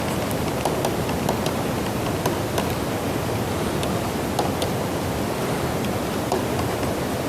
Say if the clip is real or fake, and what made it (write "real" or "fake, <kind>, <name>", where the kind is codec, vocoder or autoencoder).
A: real